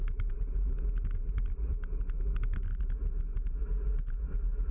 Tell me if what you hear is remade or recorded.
recorded